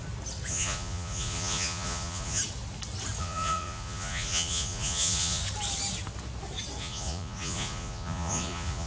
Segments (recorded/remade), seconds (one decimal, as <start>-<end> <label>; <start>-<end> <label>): 0.0-0.5 recorded; 0.5-2.4 remade; 2.4-3.2 recorded; 3.2-5.4 remade; 5.4-6.8 recorded; 6.8-8.9 remade